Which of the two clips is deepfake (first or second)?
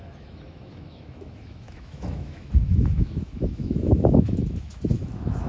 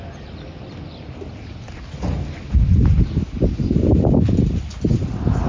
first